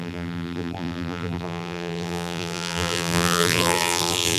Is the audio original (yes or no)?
no